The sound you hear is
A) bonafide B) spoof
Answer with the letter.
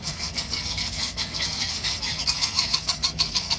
B